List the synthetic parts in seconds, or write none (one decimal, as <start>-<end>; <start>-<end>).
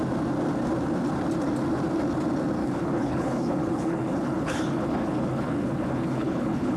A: 2.6-6.8